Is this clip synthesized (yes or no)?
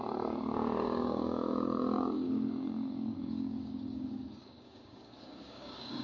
yes